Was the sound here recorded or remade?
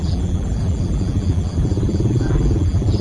remade